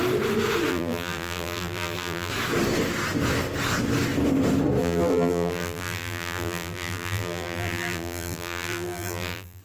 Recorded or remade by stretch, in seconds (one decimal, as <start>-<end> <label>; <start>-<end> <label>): 0.0-0.7 recorded; 0.7-2.3 remade; 2.3-4.8 recorded; 4.8-9.6 remade